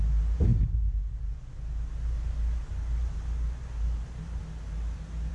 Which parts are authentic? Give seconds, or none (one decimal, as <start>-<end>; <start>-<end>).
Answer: 0.0-5.3